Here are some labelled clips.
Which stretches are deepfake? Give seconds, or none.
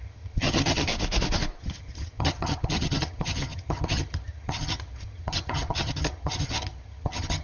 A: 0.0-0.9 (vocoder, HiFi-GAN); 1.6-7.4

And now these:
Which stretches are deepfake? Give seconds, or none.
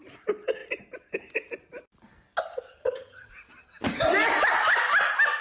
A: 2.8-3.3 (vocoder, HiFi-GAN)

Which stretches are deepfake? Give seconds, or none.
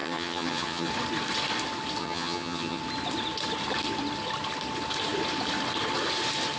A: 0.0-0.9 (vocoder, HiFi-GAN); 2.0-2.8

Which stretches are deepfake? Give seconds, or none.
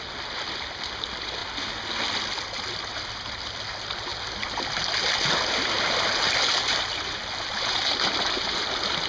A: none